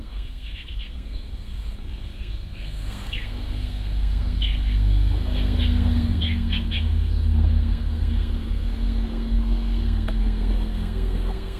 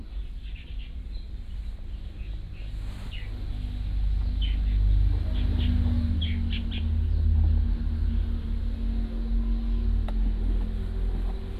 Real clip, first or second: second